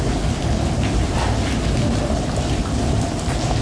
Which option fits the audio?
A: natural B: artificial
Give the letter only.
A